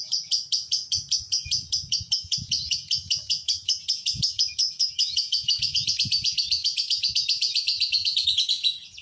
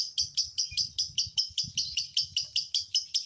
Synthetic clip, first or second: first